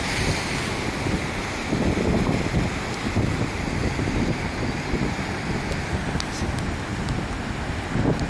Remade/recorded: recorded